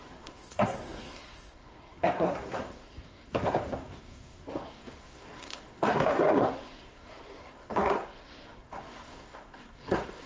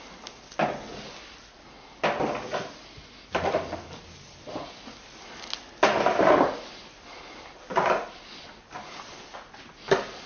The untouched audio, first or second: second